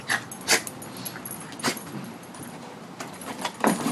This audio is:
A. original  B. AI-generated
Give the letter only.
A